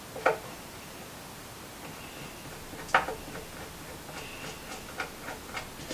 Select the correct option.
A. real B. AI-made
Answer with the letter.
A